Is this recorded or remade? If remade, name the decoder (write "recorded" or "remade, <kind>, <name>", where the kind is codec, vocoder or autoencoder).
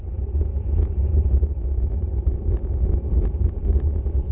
recorded